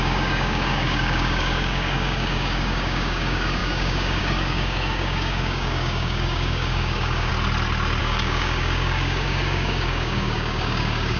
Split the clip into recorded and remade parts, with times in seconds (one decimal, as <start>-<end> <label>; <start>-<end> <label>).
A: 0.0-7.3 remade; 7.3-8.0 recorded; 8.0-11.2 remade